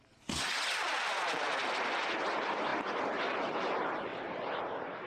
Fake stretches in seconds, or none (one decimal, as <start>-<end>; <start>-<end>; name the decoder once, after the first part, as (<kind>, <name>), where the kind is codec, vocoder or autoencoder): 4.1-5.1 (vocoder, BigVGAN v2)